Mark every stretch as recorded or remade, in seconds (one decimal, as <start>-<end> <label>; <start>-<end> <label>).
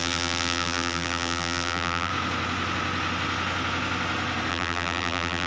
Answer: 0.0-2.1 remade; 2.1-4.5 recorded; 4.5-5.5 remade